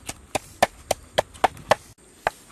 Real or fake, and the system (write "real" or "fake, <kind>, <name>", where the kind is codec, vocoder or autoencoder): real